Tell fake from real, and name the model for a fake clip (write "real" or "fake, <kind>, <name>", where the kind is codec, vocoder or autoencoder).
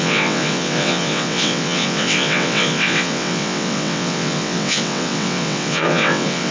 fake, vocoder, WaveNeXt